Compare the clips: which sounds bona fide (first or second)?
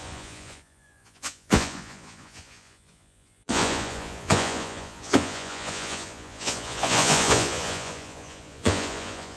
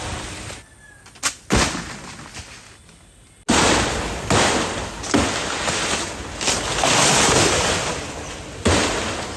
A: second